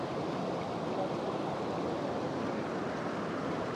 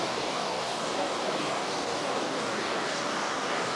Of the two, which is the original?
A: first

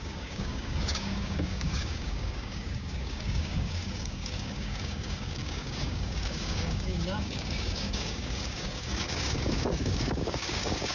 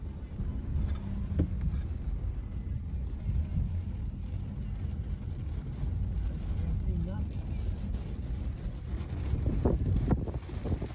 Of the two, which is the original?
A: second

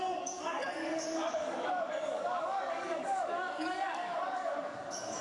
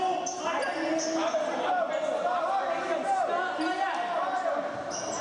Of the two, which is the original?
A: second